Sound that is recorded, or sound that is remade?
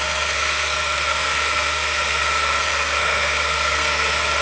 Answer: remade